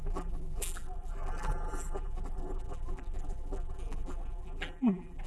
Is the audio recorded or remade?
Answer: remade